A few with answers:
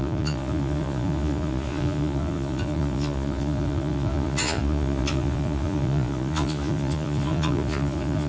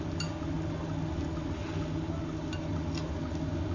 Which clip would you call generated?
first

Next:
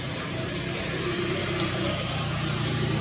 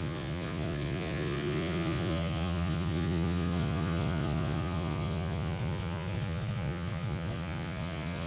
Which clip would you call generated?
second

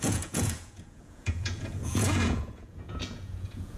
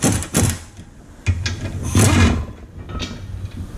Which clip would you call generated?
first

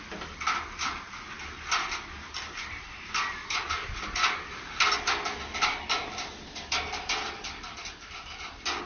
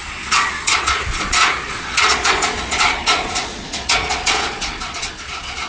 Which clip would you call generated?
second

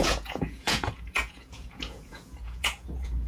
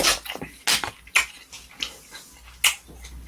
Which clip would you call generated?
first